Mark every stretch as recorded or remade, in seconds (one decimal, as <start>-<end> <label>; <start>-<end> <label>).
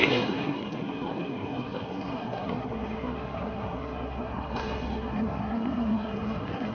0.0-6.7 remade